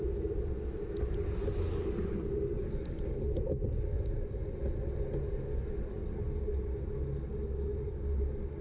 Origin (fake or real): real